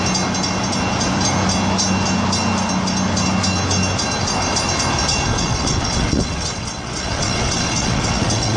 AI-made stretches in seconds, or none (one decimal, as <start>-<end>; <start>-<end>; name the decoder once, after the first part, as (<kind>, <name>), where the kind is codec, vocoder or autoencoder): 5.3-8.6 (vocoder, WaveNeXt)

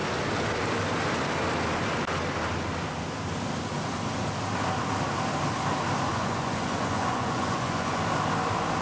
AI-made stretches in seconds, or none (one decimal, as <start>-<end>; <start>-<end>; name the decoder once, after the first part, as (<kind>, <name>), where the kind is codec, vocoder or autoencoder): 6.1-8.0 (vocoder, Vocos)